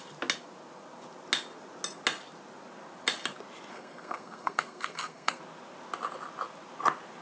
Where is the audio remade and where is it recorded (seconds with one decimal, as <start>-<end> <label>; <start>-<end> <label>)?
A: 0.0-3.7 recorded; 3.7-5.4 remade; 5.4-7.2 recorded